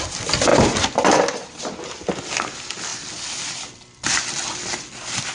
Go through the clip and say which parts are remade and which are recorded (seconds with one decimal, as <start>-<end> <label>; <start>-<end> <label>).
0.0-2.9 recorded; 2.9-4.2 remade; 4.2-5.3 recorded

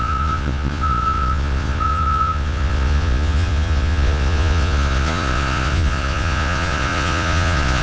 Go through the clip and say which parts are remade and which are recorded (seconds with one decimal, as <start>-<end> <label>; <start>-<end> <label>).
0.0-7.8 remade

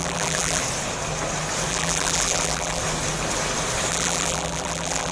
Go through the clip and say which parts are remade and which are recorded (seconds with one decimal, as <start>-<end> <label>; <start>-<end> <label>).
0.0-0.6 remade; 0.6-1.7 recorded; 1.7-2.8 remade; 2.8-3.9 recorded; 3.9-5.1 remade

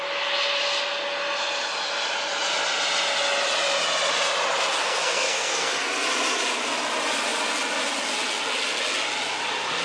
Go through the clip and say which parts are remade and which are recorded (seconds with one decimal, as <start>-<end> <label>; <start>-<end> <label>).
0.0-4.8 recorded; 4.8-5.9 remade; 5.9-9.8 recorded

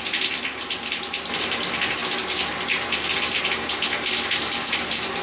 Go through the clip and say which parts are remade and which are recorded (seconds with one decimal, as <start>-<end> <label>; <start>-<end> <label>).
0.0-5.2 recorded

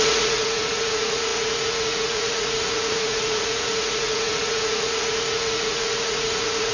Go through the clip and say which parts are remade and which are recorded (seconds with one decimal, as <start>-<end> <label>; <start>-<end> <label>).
0.0-6.7 remade